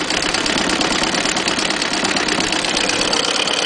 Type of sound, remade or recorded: recorded